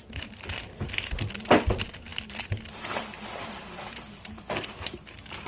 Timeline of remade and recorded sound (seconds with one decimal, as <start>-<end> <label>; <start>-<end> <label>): 0.0-5.5 recorded